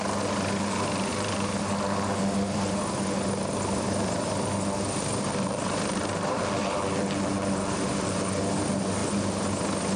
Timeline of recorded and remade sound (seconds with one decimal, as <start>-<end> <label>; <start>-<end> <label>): 0.0-1.1 recorded; 1.1-1.6 remade; 1.6-5.1 recorded; 5.1-8.4 remade; 8.4-10.0 recorded